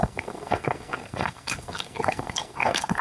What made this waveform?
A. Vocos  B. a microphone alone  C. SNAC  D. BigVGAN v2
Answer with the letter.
C